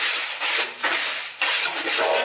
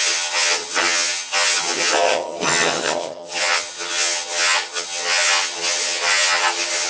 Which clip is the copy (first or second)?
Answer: second